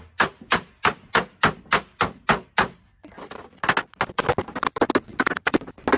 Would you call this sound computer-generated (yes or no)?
no